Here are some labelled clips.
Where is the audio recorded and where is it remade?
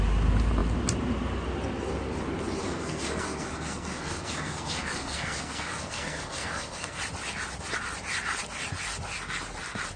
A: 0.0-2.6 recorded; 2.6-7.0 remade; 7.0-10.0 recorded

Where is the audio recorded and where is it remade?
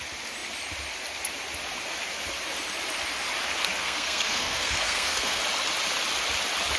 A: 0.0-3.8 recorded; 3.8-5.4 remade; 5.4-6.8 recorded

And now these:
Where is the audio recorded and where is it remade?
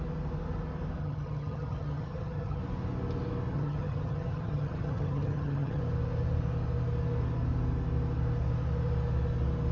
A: 0.0-1.0 recorded; 1.0-2.6 remade; 2.6-3.5 recorded; 3.5-5.8 remade; 5.8-9.7 recorded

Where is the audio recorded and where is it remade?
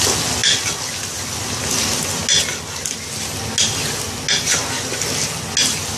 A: 0.0-0.4 remade; 0.4-1.5 recorded; 1.5-2.2 remade; 2.2-6.0 recorded